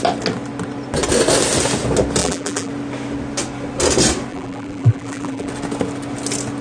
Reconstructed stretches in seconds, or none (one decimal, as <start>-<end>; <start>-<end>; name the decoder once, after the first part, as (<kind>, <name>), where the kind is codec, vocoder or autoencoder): 2.2-2.7 (vocoder, BigVGAN v2); 4.3-5.5